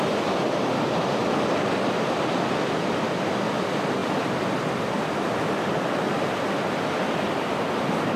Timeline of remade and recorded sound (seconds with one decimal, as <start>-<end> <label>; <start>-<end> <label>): 0.0-8.2 recorded